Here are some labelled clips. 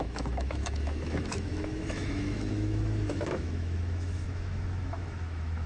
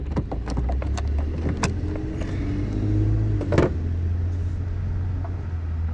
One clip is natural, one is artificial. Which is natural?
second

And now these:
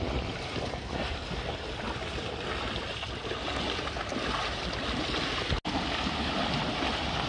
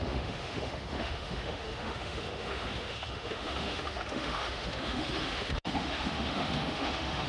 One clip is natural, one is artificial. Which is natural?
first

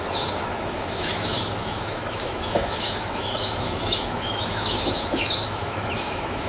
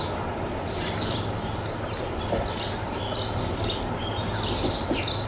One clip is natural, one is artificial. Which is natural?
second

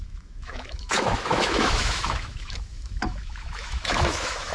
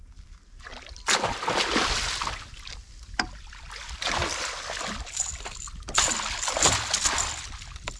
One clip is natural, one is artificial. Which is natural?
second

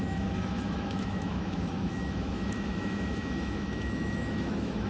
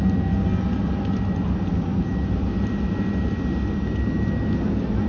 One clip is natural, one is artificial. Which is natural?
second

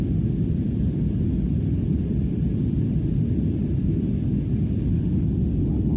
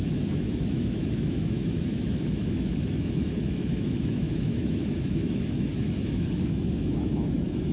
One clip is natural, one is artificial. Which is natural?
first